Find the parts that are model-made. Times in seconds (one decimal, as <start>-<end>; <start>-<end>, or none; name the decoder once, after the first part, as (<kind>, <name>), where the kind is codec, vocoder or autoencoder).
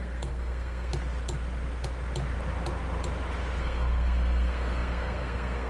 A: 0.0-0.9 (codec, SNAC); 3.6-5.7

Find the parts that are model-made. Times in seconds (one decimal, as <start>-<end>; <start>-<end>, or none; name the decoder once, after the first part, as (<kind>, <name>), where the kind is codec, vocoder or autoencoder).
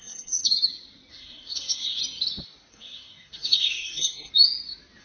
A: 0.0-0.4 (codec, SNAC); 1.1-2.0; 2.7-4.3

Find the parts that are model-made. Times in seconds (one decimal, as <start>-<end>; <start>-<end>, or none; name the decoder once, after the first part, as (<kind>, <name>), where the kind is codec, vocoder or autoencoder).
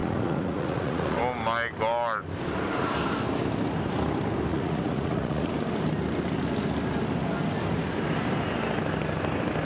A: 0.0-1.2 (vocoder, Vocos); 4.5-5.5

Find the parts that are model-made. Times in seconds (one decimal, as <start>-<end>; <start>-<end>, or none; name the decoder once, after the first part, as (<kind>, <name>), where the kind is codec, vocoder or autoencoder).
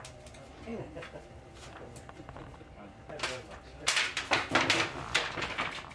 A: none